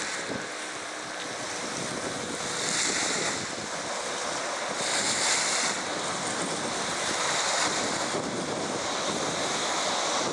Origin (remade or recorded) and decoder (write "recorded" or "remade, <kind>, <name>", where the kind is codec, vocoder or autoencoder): recorded